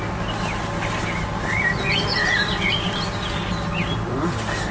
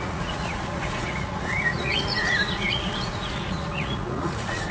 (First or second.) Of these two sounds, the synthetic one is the second